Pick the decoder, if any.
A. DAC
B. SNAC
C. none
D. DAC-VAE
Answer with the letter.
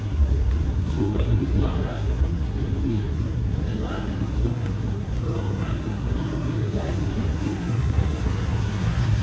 B